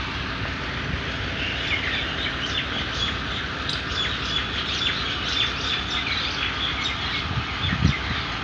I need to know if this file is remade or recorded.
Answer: recorded